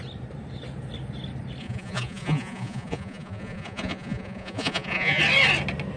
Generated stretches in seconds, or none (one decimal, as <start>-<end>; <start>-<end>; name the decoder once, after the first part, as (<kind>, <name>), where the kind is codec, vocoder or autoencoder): 1.6-5.2 (vocoder, Vocos)